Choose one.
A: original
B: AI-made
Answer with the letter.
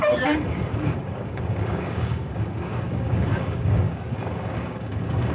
B